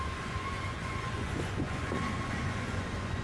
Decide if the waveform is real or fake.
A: fake